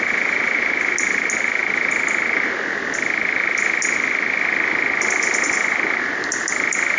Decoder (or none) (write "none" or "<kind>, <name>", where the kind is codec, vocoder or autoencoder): none